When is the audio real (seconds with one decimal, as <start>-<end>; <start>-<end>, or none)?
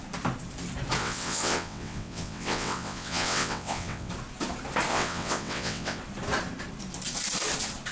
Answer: 0.0-1.0; 4.1-4.9; 6.0-7.9